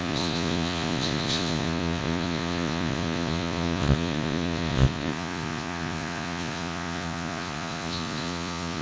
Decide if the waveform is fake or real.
fake